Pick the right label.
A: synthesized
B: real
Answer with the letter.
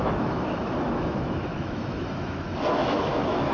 A